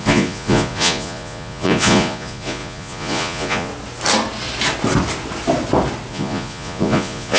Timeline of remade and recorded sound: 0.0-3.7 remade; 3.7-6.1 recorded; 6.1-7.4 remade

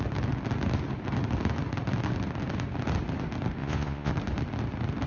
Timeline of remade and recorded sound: 0.0-3.6 recorded; 3.6-4.1 remade; 4.1-5.1 recorded